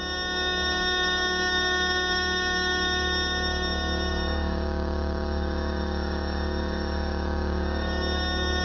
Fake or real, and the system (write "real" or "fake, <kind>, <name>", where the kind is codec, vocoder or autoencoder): fake, codec, DAC